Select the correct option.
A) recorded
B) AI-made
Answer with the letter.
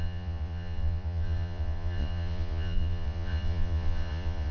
B